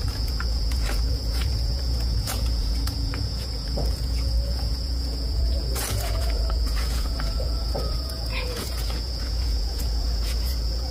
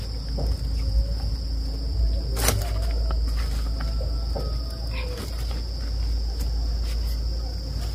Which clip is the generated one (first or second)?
first